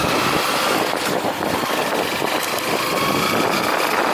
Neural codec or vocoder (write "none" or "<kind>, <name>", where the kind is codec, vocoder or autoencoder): none